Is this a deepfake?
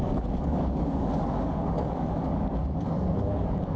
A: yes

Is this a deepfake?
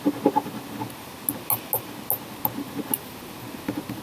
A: no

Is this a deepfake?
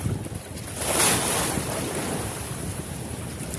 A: no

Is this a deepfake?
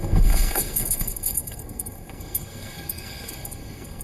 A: yes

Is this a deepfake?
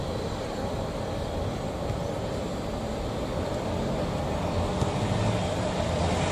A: no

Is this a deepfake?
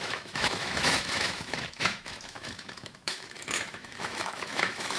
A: yes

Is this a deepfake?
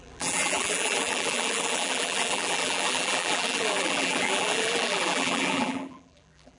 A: yes